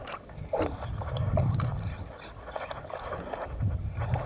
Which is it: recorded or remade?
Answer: recorded